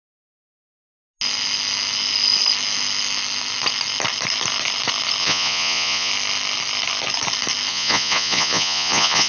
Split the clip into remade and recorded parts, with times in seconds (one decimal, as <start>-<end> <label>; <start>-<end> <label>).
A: 0.0-5.2 recorded; 5.2-6.1 remade; 6.1-7.7 recorded; 7.7-9.3 remade